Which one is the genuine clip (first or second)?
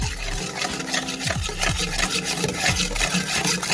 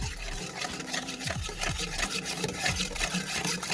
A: first